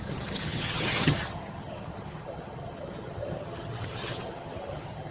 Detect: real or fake fake